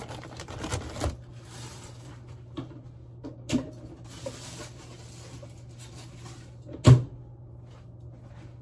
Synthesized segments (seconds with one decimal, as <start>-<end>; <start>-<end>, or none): 1.3-2.6